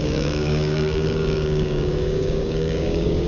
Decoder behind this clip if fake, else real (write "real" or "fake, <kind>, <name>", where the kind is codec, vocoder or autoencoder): fake, codec, DAC